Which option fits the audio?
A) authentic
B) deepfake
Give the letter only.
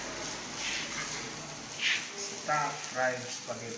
A